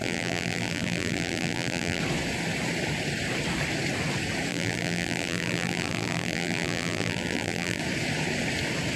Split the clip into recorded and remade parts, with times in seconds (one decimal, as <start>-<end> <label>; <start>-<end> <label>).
0.0-2.0 remade; 2.0-4.5 recorded; 4.5-7.8 remade; 7.8-9.0 recorded